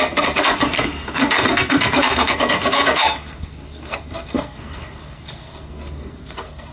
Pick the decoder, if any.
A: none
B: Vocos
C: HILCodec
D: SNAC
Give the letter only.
D